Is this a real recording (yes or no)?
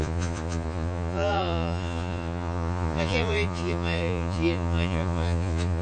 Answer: no